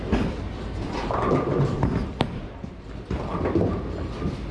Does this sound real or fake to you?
real